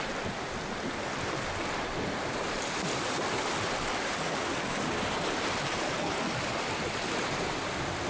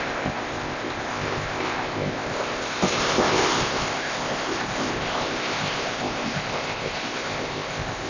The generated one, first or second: second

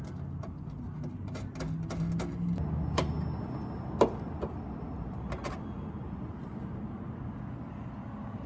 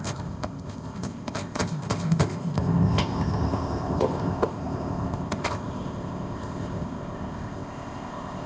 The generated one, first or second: second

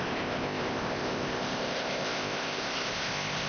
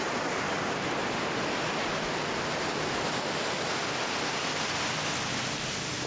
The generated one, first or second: first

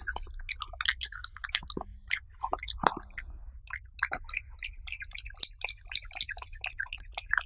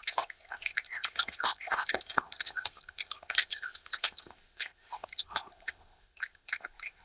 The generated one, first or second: second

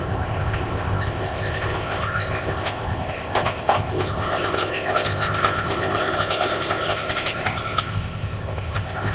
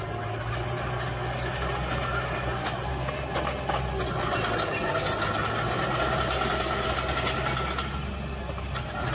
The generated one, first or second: first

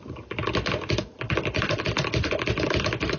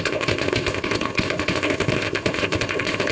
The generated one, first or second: second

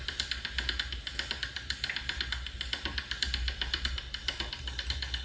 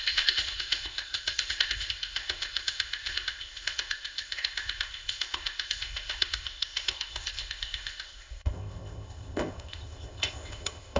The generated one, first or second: second